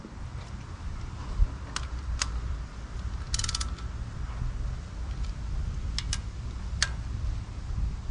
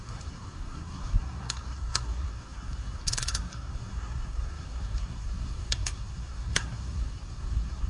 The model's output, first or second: second